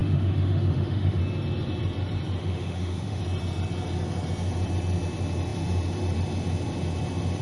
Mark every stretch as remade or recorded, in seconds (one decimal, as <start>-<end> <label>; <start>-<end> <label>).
0.0-1.2 remade; 1.2-2.4 recorded; 2.4-3.2 remade; 3.2-7.4 recorded